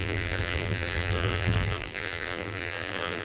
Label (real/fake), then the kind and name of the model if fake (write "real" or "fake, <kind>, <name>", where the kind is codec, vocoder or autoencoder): fake, vocoder, BigVGAN v2